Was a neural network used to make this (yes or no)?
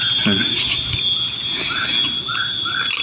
no